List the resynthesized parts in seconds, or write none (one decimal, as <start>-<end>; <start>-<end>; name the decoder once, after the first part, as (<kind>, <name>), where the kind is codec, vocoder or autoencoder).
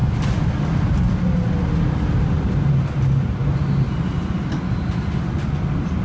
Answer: none